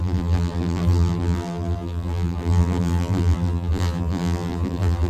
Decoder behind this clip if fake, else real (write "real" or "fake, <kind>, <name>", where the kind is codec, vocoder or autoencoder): fake, vocoder, BigVGAN v2